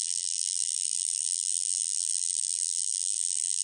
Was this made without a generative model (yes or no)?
no